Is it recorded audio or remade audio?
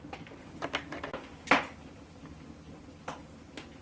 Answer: recorded